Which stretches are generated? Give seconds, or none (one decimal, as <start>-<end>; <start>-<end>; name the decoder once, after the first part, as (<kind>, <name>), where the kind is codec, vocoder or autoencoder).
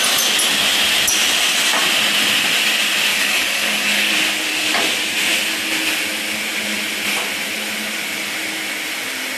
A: 3.1-4.1 (codec, DAC)